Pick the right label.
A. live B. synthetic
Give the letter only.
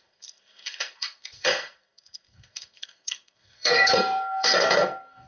B